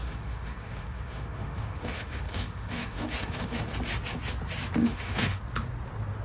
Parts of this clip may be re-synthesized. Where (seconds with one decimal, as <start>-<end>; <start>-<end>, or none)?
0.0-3.7; 4.8-5.4